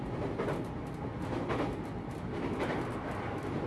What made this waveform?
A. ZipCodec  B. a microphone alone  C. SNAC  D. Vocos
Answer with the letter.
B